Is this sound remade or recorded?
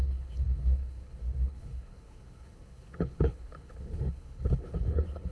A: remade